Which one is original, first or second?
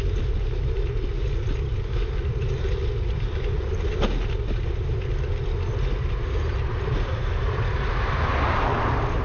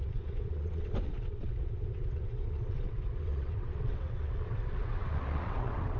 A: first